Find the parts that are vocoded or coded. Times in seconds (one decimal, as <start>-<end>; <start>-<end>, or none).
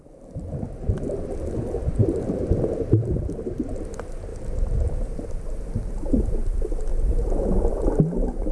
2.0-3.4; 4.3-6.2